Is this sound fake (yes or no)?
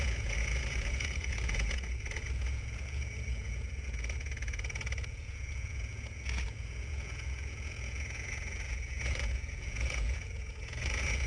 yes